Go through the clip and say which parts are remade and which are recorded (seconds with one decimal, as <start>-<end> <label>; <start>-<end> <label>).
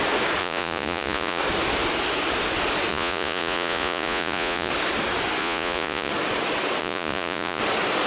0.0-0.4 recorded; 0.4-1.4 remade; 1.4-2.9 recorded; 2.9-4.7 remade; 4.7-5.4 recorded; 5.4-6.1 remade; 6.1-6.8 recorded; 6.8-7.6 remade; 7.6-8.1 recorded